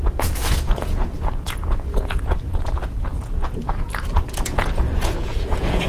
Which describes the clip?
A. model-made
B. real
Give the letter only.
A